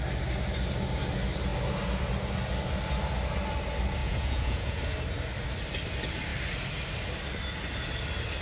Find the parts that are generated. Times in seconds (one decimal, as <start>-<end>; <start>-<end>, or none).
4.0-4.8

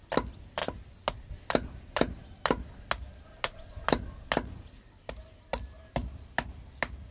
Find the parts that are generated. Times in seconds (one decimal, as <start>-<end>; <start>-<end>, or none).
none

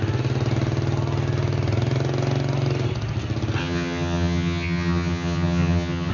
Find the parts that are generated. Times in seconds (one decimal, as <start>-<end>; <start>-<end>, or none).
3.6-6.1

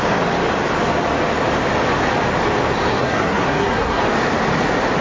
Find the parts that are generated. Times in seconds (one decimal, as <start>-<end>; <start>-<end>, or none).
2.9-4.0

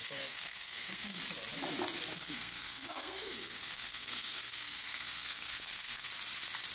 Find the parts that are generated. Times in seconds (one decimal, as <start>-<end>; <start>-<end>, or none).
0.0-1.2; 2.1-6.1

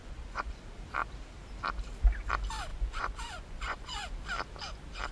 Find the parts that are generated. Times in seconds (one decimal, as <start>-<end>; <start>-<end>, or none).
0.0-0.6; 2.7-4.1

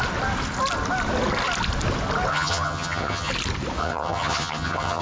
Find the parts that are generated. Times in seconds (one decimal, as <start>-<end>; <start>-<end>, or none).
2.3-3.3; 3.8-5.0